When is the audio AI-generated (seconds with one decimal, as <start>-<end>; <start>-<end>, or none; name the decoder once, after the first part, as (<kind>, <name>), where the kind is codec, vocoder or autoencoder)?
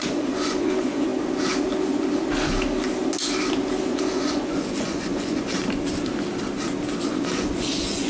0.0-1.1 (vocoder, Vocos); 3.9-5.6; 7.0-8.1